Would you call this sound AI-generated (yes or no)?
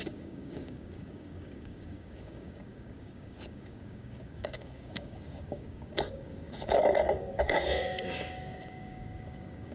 yes